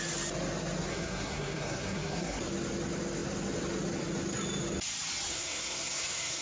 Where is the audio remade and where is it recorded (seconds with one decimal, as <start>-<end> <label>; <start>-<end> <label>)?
0.0-0.9 recorded; 0.9-2.4 remade; 2.4-5.3 recorded; 5.3-6.4 remade